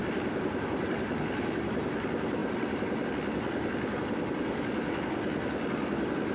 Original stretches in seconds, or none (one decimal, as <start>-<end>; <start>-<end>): 0.0-6.3